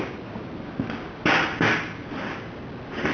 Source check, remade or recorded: recorded